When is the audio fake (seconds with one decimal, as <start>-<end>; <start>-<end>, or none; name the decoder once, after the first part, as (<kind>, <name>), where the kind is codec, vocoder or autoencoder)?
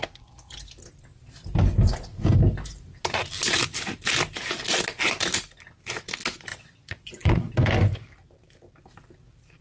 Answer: 6.5-7.4 (vocoder, Vocos)